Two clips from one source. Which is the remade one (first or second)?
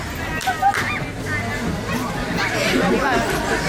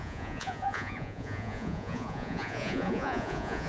second